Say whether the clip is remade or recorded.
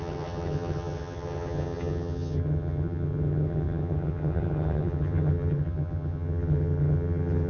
remade